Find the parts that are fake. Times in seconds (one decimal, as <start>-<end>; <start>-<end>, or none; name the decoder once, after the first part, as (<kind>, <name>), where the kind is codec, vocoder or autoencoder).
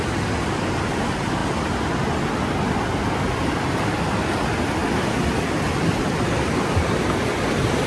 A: none